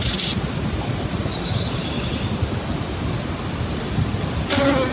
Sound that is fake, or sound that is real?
real